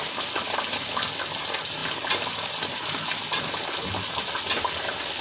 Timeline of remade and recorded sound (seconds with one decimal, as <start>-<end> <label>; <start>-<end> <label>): 0.0-5.2 recorded